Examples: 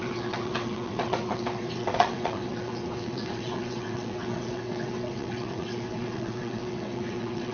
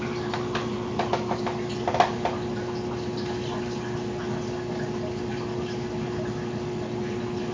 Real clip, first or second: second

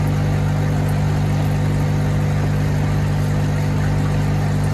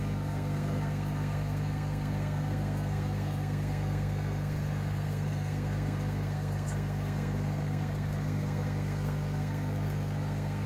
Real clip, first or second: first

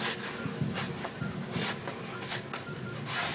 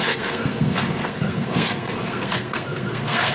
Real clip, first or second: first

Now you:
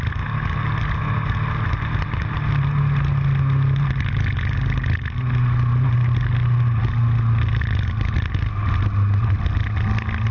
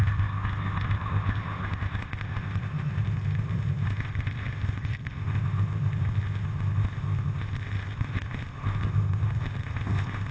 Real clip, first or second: first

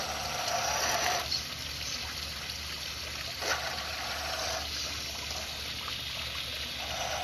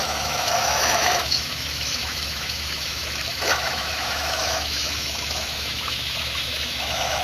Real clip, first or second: first